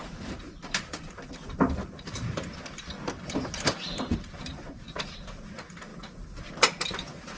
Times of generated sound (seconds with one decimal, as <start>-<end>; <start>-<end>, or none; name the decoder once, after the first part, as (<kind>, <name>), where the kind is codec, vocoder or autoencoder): 0.0-7.4 (vocoder, BigVGAN v2)